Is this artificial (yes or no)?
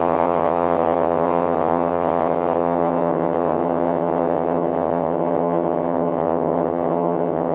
yes